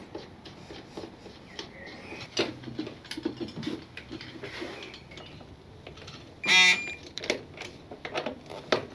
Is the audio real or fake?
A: real